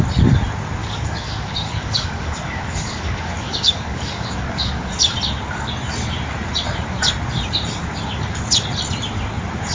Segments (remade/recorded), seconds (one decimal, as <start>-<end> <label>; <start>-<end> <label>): 0.0-0.8 recorded; 0.8-4.9 remade; 4.9-9.7 recorded